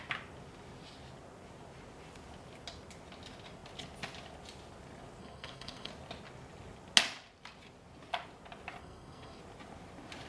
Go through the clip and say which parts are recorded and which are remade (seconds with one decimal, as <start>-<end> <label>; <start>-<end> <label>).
0.0-5.2 recorded; 5.2-5.9 remade; 5.9-8.8 recorded; 8.8-9.4 remade; 9.4-10.3 recorded